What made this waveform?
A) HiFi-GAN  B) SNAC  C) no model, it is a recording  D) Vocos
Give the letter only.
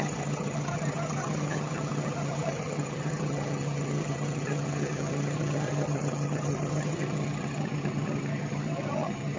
A